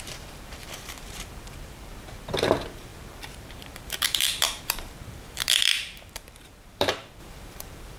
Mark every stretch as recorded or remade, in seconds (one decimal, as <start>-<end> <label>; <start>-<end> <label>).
0.0-8.0 remade